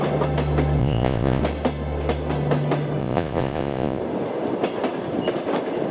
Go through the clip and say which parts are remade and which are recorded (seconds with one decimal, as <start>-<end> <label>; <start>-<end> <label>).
0.0-0.8 recorded; 0.8-1.4 remade; 1.4-3.0 recorded; 3.0-4.0 remade; 4.0-5.9 recorded